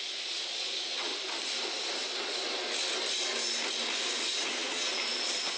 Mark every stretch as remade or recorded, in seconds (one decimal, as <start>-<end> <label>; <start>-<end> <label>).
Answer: 0.0-1.1 remade; 1.1-4.5 recorded; 4.5-5.6 remade